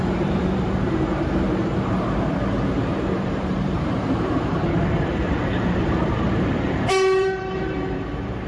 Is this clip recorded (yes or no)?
no